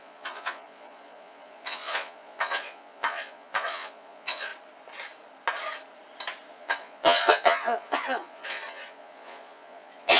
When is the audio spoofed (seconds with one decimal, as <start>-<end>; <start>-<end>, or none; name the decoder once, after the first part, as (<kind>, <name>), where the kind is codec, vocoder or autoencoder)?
0.0-4.5 (vocoder, Vocos); 6.5-10.2